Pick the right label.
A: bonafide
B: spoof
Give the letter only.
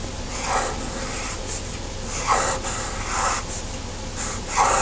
A